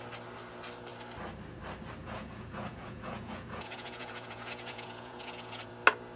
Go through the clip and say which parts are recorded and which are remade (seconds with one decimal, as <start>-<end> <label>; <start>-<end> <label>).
0.0-2.0 recorded; 2.0-5.7 remade; 5.7-6.2 recorded